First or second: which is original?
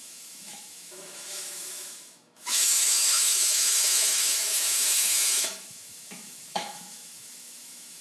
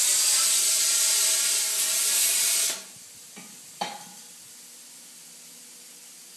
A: second